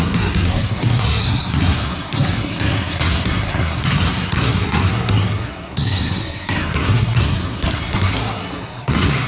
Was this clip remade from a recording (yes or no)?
yes